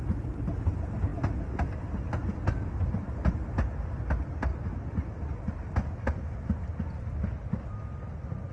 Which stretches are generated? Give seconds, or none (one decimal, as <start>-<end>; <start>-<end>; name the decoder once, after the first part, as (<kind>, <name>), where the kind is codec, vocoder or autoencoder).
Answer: none